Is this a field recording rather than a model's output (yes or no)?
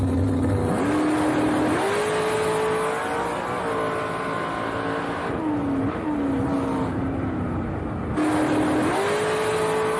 yes